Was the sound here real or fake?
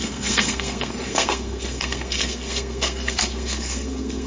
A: fake